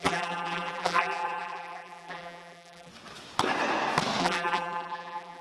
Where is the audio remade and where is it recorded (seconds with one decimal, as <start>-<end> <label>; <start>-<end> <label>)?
0.0-2.9 remade; 2.9-4.2 recorded; 4.2-5.4 remade

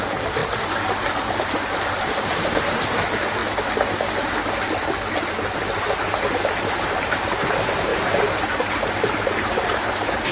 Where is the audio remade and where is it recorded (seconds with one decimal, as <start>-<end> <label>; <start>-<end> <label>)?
0.0-0.4 remade; 0.4-2.2 recorded; 2.2-3.4 remade; 3.4-6.4 recorded; 6.4-7.9 remade; 7.9-8.6 recorded; 8.6-10.3 remade

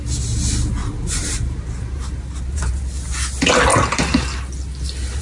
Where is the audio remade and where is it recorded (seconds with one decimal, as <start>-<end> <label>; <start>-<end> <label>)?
0.0-0.8 recorded; 0.8-2.8 remade; 2.8-5.2 recorded

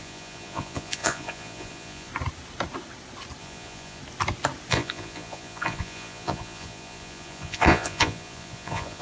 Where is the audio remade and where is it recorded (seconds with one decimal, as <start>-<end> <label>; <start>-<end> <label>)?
0.0-2.1 remade; 2.1-3.4 recorded; 3.4-4.0 remade; 4.0-4.7 recorded; 4.7-9.0 remade

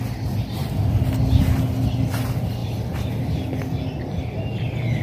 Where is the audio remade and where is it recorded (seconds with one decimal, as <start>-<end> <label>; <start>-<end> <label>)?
0.0-5.0 recorded